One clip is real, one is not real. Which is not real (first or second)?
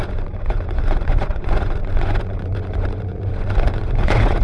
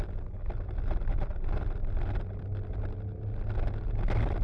first